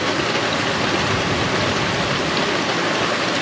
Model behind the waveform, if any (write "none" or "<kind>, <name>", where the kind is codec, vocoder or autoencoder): none